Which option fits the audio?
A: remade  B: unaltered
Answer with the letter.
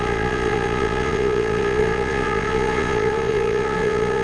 A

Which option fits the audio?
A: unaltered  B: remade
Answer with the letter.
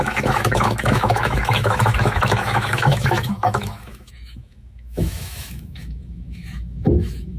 B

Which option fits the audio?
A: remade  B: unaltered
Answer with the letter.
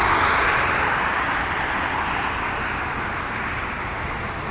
B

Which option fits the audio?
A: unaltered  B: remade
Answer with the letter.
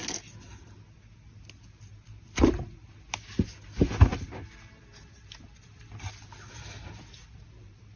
A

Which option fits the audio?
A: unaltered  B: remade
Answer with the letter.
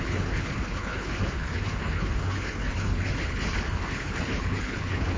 B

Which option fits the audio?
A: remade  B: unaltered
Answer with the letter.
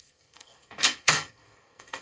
A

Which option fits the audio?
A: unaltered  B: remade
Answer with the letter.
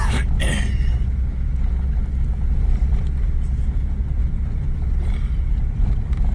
A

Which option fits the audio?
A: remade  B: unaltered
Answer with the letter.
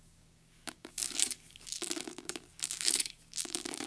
A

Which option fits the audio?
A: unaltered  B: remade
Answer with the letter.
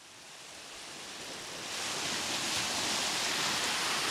A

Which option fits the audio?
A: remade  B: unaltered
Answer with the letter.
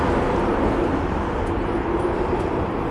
B